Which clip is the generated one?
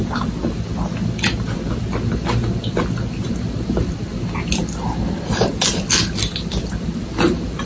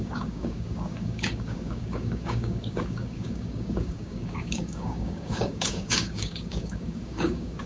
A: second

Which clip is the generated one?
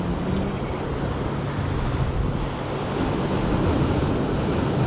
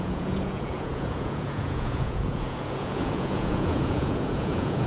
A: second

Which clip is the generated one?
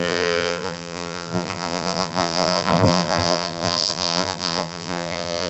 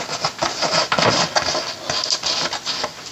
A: first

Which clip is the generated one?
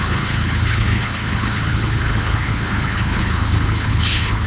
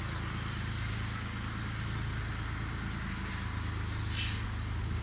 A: first